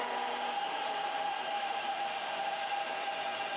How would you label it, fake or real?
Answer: real